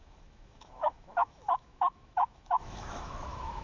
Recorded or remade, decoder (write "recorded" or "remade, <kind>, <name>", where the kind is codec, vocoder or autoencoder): remade, autoencoder, DAC-VAE